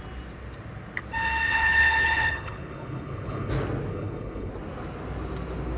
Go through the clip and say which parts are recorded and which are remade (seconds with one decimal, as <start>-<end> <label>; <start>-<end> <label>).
0.0-1.5 recorded; 1.5-3.5 remade; 3.5-3.9 recorded; 3.9-4.5 remade; 4.5-5.8 recorded